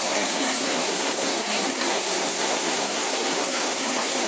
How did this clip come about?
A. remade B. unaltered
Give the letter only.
A